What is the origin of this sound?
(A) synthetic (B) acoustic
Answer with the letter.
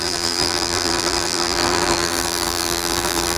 A